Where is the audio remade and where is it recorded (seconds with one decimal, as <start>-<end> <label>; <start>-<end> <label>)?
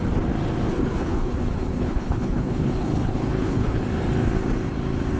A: 0.0-0.7 recorded; 0.7-3.8 remade; 3.8-5.2 recorded